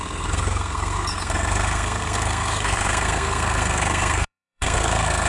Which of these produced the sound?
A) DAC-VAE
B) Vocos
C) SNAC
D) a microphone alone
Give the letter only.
C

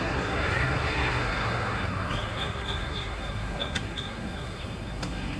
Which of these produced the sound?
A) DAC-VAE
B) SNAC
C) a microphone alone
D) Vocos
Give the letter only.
B